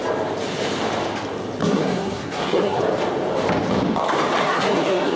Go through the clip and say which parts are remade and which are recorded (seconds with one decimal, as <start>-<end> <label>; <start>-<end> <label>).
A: 0.0-1.6 recorded; 1.6-2.8 remade; 2.8-4.4 recorded; 4.4-5.2 remade

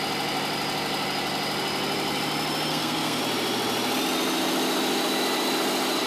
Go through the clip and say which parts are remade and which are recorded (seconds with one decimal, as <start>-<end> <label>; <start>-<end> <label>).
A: 0.0-2.7 recorded; 2.7-3.2 remade; 3.2-6.1 recorded

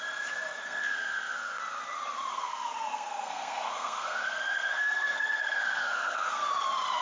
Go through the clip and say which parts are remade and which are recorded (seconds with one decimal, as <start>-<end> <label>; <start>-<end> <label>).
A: 0.0-0.6 recorded; 0.6-1.6 remade; 1.6-2.3 recorded; 2.3-6.5 remade; 6.5-7.0 recorded

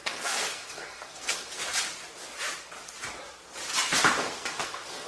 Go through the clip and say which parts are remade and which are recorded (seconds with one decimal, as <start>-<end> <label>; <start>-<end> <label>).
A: 0.0-1.6 remade; 1.6-4.2 recorded; 4.2-5.1 remade

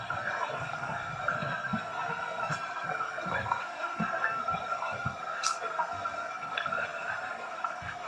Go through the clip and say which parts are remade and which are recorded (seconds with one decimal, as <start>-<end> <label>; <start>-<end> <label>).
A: 0.0-8.1 remade

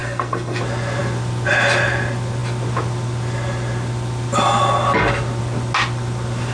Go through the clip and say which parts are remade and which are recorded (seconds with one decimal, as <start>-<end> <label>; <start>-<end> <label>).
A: 0.0-0.6 remade; 0.6-6.5 recorded

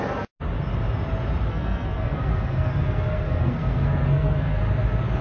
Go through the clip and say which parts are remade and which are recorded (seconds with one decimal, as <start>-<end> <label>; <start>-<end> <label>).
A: 0.0-1.5 recorded; 1.5-4.6 remade; 4.6-5.2 recorded

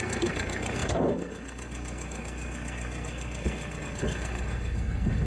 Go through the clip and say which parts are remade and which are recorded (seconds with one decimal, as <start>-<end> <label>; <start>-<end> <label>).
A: 0.0-5.3 remade